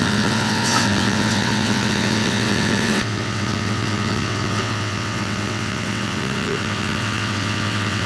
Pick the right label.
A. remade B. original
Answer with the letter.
A